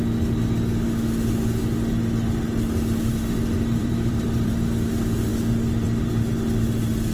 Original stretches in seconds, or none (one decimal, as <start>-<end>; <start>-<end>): 0.0-3.8; 4.5-7.1

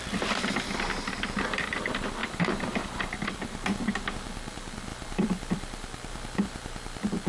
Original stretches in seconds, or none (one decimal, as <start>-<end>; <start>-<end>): none